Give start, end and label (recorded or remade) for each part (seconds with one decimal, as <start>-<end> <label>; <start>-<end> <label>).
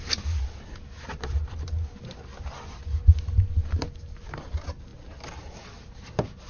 0.0-6.5 recorded